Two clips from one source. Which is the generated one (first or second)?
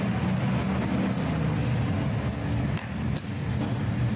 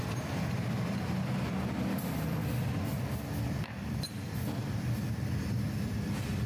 second